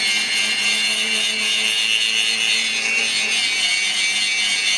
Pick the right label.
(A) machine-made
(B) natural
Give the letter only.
B